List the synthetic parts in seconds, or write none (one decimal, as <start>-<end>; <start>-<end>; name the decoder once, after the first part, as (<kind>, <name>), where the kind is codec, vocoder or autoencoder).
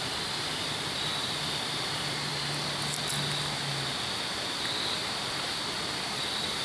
0.0-2.3 (vocoder, BigVGAN v2)